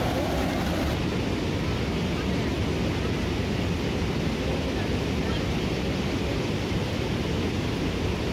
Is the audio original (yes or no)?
yes